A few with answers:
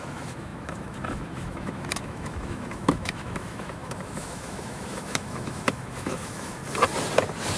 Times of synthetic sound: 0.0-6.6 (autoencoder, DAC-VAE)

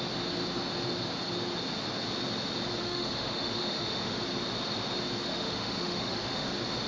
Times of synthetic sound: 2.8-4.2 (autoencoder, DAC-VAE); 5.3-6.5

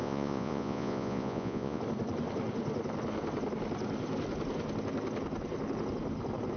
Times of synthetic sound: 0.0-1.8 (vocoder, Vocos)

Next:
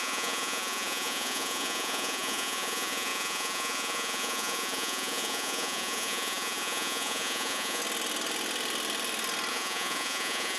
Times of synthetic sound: 0.0-7.8 (vocoder, Vocos); 9.5-10.6

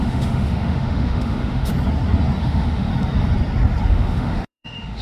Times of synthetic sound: 0.0-1.7 (autoencoder, DAC-VAE); 2.4-2.9; 3.9-5.0